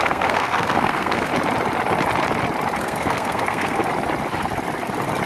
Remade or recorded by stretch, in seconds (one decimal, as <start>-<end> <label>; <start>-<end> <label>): 0.0-1.3 remade; 1.3-2.8 recorded; 2.8-3.8 remade; 3.8-5.3 recorded